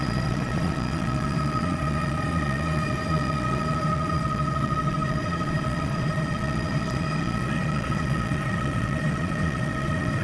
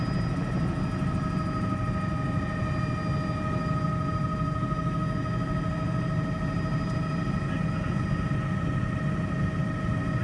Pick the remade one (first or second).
first